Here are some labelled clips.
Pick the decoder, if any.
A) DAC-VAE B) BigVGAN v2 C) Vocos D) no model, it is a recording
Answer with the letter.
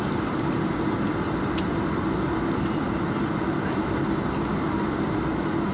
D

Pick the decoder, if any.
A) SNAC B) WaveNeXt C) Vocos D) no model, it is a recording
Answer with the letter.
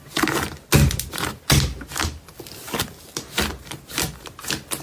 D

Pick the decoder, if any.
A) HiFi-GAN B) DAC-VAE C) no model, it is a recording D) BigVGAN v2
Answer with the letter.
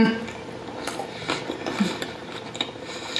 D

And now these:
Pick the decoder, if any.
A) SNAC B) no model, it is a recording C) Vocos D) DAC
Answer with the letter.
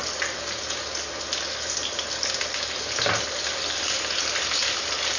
B